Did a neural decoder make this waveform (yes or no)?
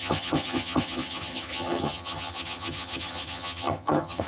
yes